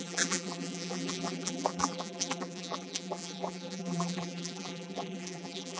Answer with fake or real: fake